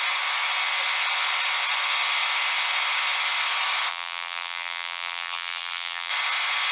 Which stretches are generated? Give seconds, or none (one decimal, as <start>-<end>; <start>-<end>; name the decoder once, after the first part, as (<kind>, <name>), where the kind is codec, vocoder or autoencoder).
3.9-6.1 (vocoder, BigVGAN v2)